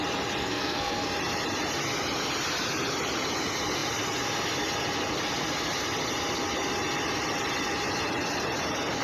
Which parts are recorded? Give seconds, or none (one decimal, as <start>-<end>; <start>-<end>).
0.0-0.4; 1.1-9.0